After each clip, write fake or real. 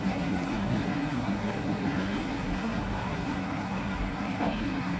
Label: fake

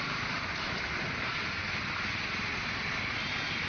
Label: real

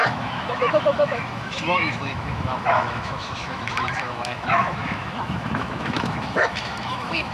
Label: fake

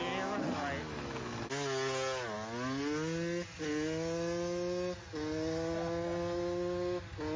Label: real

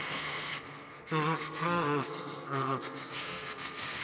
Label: fake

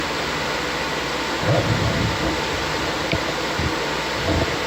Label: real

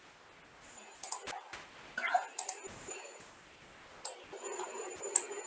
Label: real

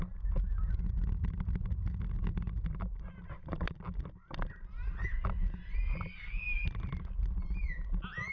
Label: real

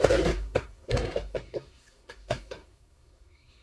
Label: fake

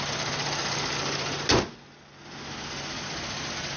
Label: real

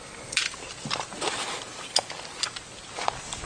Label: real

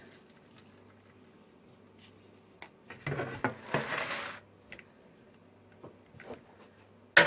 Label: real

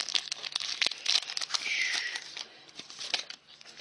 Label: real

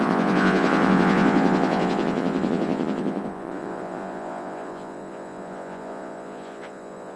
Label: fake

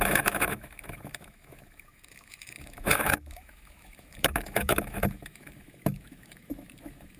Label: fake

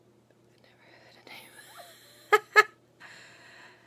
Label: real